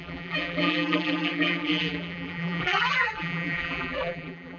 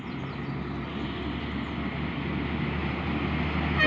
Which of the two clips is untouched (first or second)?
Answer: second